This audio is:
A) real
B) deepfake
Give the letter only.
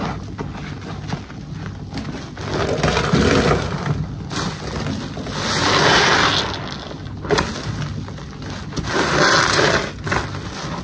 A